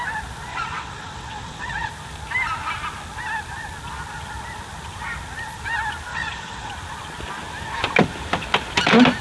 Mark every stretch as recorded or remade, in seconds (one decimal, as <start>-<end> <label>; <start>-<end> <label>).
0.0-0.5 recorded; 0.5-1.9 remade; 1.9-6.1 recorded; 6.1-6.7 remade; 6.7-9.2 recorded